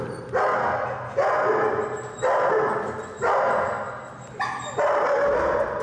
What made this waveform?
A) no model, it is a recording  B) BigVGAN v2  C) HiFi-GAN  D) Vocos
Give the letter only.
A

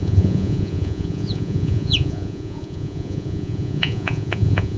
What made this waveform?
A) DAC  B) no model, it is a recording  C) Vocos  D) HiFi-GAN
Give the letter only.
C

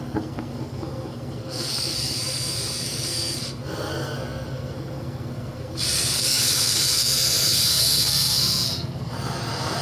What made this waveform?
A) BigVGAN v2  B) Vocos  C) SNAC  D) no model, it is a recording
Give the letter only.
C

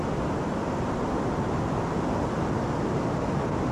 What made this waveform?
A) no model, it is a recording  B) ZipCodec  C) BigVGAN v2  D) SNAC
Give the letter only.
A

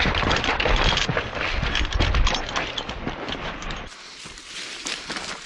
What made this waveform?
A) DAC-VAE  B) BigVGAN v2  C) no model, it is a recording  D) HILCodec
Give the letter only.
C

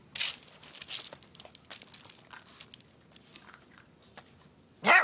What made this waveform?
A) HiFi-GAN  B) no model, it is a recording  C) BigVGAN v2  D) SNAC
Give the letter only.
B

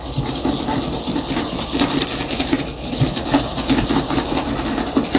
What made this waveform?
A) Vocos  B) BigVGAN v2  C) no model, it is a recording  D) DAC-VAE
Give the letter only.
C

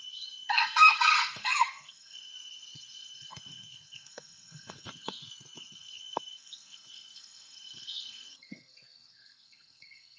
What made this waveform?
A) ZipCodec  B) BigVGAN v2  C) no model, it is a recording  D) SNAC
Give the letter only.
D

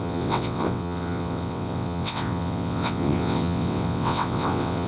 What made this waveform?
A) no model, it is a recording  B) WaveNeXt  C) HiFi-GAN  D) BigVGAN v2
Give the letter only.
B